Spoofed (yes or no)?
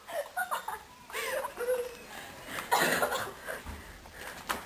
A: no